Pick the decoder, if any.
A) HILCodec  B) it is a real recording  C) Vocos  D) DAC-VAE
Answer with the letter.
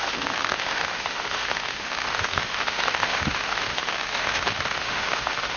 D